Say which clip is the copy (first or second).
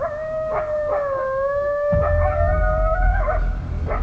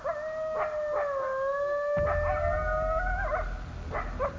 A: first